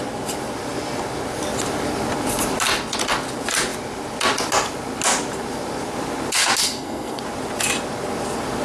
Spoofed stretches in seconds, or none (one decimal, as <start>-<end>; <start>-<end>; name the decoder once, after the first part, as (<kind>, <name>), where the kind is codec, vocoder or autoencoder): 6.6-7.2 (codec, SNAC)